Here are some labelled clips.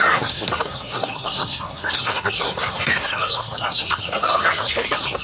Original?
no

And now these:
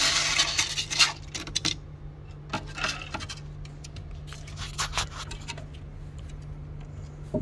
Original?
yes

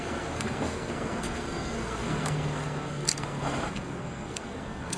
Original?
no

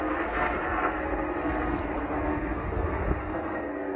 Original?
no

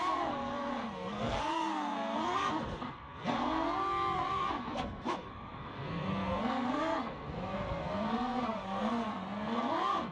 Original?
no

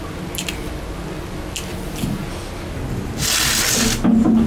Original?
yes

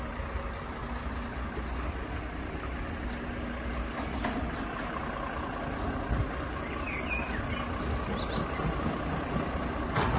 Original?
yes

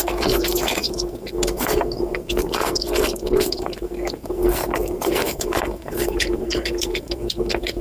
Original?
no